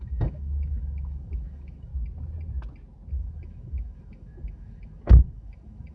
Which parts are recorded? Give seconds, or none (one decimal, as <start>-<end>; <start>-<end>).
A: 1.9-3.1